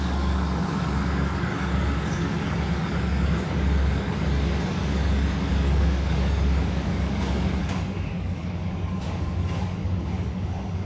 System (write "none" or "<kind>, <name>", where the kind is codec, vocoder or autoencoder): codec, DAC